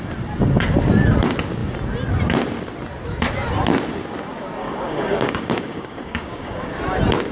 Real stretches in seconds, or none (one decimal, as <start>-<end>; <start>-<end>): 0.0-4.6; 6.8-7.3